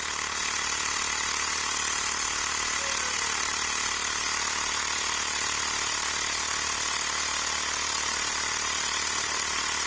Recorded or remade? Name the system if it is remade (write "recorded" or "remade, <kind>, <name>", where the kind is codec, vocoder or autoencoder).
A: recorded